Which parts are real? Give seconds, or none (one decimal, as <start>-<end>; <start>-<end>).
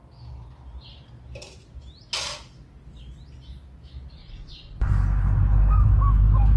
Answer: 0.0-4.2; 4.9-6.6